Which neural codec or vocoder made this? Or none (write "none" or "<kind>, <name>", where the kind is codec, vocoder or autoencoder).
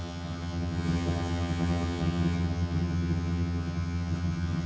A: vocoder, HiFi-GAN